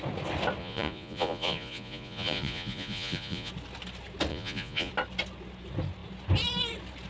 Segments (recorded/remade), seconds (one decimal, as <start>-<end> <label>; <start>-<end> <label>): 0.0-0.6 recorded; 0.6-3.5 remade; 3.5-4.3 recorded; 4.3-4.9 remade; 4.9-7.1 recorded